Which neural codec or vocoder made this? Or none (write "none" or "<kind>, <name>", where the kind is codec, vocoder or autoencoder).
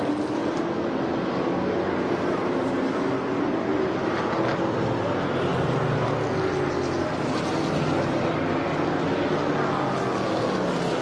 none